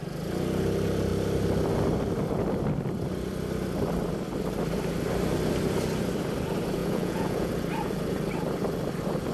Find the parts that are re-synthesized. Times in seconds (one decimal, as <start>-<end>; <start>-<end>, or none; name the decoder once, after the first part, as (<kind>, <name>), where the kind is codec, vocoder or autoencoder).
6.8-7.5 (vocoder, Vocos)